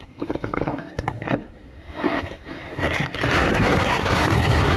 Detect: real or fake fake